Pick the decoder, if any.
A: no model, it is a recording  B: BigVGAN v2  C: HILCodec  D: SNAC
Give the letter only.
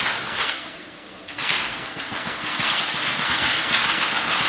D